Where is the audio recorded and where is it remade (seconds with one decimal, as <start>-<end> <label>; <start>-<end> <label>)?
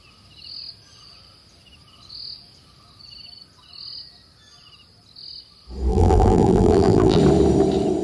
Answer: 0.0-5.9 recorded; 5.9-7.2 remade; 7.2-8.0 recorded